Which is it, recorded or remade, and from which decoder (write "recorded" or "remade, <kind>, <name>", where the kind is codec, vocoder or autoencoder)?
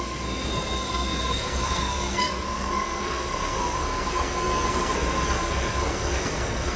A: remade, codec, SNAC